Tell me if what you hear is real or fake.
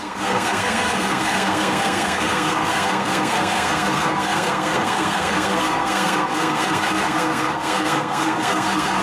fake